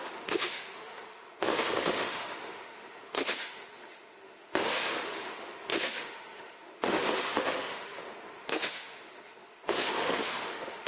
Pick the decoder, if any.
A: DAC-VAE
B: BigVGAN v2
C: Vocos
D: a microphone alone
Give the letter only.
A